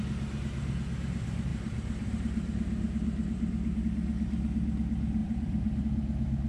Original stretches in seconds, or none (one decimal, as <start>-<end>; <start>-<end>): 0.0-1.5; 3.8-5.2; 5.8-6.5